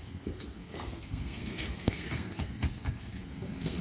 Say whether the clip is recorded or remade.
remade